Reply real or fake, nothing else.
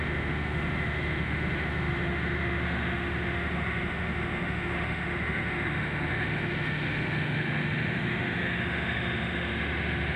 fake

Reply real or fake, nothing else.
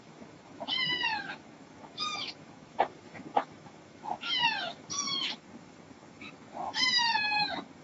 fake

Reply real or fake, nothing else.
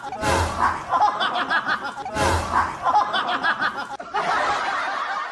real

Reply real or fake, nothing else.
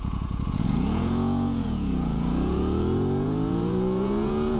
fake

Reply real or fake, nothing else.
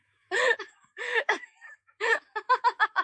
fake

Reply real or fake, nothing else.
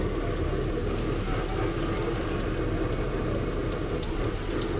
real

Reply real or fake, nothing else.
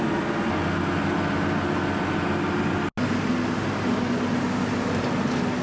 real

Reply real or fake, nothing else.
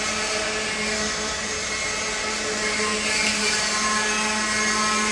real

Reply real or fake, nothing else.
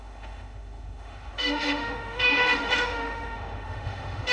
fake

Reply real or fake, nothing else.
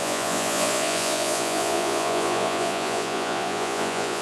fake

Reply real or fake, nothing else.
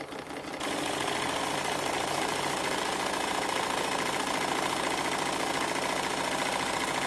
real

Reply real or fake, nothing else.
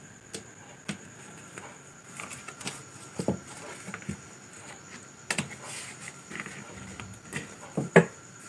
real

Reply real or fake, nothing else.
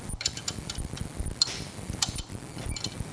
fake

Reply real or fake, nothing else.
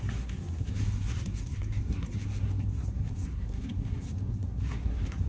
fake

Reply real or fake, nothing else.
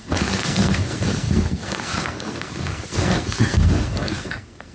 fake